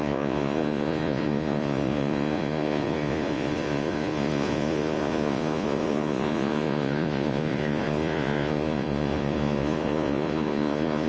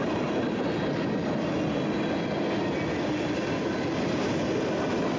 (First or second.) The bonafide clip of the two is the second